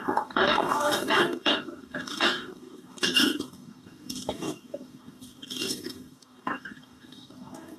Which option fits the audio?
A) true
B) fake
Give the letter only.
B